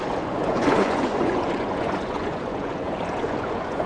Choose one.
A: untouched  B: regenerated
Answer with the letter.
B